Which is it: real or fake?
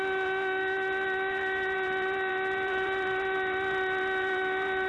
fake